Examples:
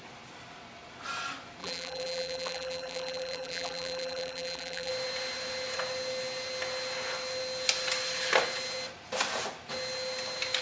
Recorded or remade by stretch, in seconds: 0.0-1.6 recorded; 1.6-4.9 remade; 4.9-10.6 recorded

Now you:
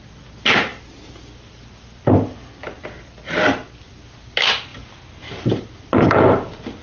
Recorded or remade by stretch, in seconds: 0.0-6.8 recorded

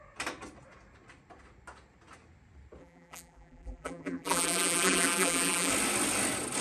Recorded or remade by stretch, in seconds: 0.0-2.8 recorded; 2.8-5.7 remade; 5.7-6.6 recorded